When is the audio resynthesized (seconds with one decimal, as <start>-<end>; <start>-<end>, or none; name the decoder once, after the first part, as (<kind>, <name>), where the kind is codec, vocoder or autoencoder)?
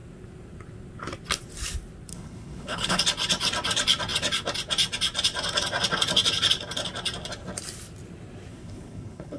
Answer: 2.1-3.0 (codec, HILCodec); 8.5-9.4